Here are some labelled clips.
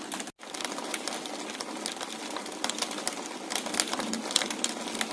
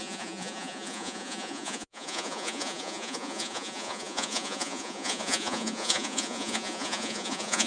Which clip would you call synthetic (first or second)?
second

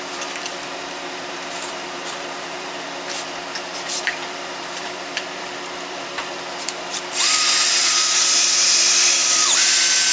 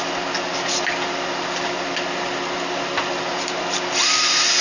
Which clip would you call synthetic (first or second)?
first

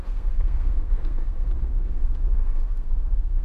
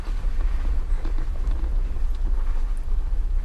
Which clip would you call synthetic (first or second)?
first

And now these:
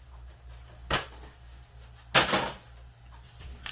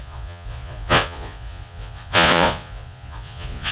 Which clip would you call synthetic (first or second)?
second